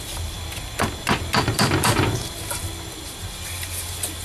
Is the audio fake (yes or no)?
no